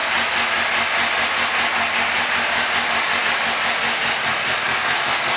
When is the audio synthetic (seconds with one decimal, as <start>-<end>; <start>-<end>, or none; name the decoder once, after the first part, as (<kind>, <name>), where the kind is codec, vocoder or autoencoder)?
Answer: none